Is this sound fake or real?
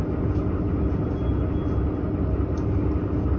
real